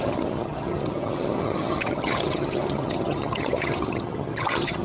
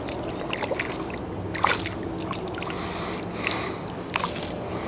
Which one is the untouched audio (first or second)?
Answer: second